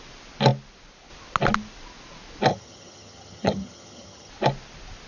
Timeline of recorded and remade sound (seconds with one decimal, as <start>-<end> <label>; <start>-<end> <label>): 0.0-2.5 recorded; 2.5-4.3 remade; 4.3-5.1 recorded